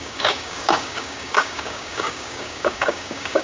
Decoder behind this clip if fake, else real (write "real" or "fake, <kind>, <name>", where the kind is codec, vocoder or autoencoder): fake, codec, DAC